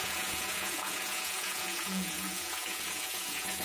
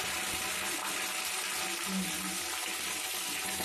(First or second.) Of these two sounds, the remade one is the first